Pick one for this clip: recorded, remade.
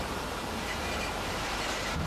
remade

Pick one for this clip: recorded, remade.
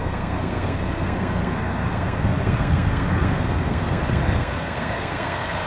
remade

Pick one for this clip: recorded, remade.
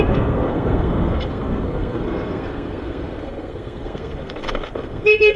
remade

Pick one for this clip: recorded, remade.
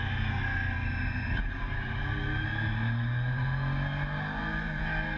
recorded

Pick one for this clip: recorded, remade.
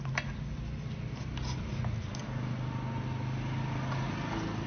recorded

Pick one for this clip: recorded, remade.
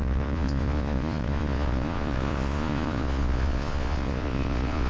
remade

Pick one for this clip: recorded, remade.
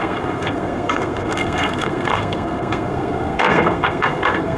remade